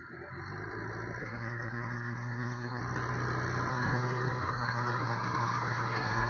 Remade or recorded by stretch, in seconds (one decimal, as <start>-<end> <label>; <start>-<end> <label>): 0.0-1.2 recorded; 1.2-2.8 remade; 2.8-3.7 recorded; 3.7-6.3 remade